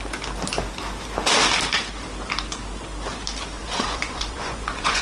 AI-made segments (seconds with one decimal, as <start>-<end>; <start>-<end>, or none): 3.6-5.0